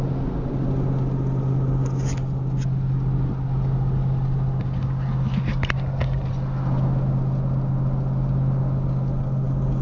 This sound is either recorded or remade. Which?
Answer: recorded